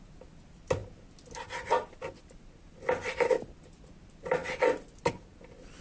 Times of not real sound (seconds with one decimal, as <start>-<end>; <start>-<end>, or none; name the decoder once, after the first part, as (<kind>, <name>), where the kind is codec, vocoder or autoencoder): none